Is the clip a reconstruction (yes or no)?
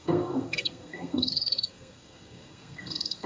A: yes